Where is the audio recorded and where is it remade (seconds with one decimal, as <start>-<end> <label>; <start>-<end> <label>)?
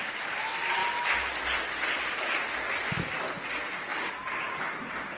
0.0-5.2 recorded